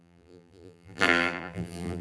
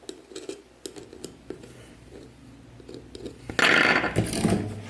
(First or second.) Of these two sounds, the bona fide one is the second